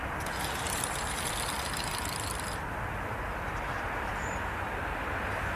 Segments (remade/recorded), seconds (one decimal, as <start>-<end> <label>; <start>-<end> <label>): 0.0-5.6 recorded